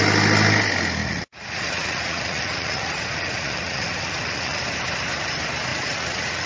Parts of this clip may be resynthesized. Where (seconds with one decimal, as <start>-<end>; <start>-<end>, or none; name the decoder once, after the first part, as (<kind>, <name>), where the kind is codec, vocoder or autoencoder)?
1.0-4.6 (vocoder, Vocos); 5.7-6.5